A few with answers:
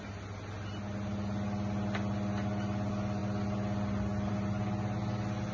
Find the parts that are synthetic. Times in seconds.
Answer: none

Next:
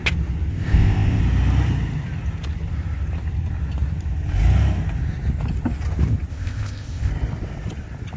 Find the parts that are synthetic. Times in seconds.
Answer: 0.5-1.2 (codec, ZipCodec); 6.3-7.1

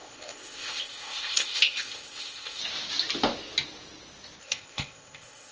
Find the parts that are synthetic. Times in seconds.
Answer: 0.0-2.6 (codec, ZipCodec); 4.4-5.5

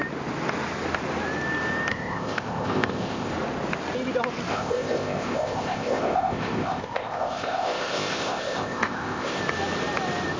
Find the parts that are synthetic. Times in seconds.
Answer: 1.9-3.3 (codec, ZipCodec); 4.5-9.4